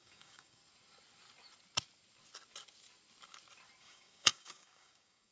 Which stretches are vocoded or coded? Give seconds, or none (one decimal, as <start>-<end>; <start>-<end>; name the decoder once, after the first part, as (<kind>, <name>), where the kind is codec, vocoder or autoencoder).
0.0-0.6 (codec, DAC); 3.8-5.3